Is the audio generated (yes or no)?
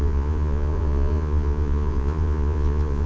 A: yes